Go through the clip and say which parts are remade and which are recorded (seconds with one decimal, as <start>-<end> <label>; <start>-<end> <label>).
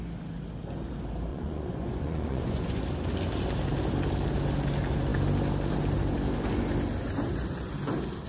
0.0-1.3 recorded; 1.3-2.8 remade; 2.8-8.3 recorded